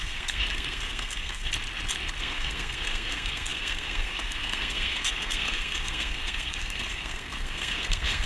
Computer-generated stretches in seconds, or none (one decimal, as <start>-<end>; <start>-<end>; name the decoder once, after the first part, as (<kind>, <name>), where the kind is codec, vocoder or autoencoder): 0.0-1.5 (codec, SNAC); 2.2-8.3